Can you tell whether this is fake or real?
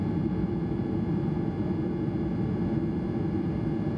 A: real